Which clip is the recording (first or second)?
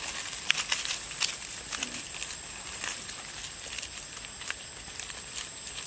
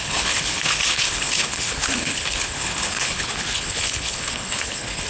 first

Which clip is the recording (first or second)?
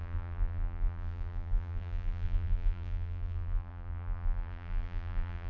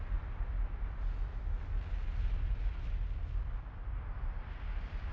second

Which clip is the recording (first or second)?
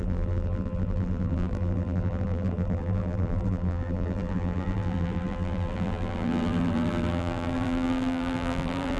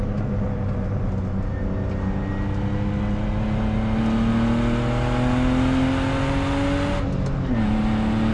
second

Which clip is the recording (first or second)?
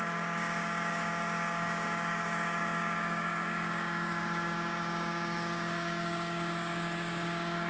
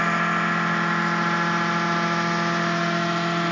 second